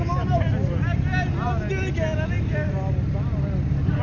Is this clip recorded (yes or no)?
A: yes